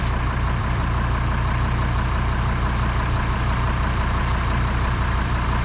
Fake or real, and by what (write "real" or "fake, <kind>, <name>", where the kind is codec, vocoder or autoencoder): fake, vocoder, BigVGAN v2